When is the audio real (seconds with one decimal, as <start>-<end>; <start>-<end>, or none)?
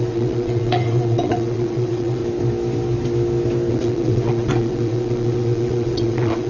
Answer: 2.2-3.7